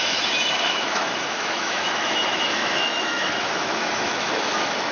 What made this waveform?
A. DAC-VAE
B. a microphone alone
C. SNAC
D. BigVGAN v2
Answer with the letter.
A